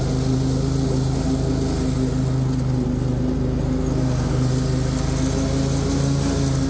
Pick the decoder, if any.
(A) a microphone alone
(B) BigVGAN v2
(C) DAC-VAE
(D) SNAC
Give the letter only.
A